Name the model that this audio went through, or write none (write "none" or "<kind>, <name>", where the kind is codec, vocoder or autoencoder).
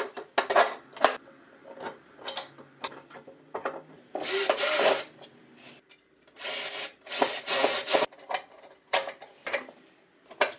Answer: none